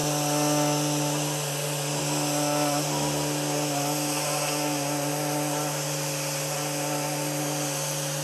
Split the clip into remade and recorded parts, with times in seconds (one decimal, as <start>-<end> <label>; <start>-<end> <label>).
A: 0.0-8.2 recorded